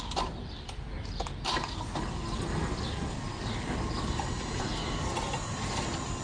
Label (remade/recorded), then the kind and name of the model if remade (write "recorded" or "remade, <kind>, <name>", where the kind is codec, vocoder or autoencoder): recorded